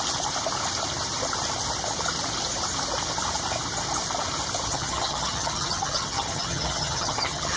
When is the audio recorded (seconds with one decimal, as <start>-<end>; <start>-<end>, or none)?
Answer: 0.0-4.7